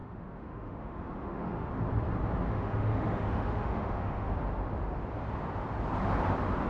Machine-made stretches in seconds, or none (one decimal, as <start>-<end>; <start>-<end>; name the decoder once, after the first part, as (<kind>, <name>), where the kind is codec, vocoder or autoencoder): 0.0-1.7 (autoencoder, DAC-VAE); 2.5-4.3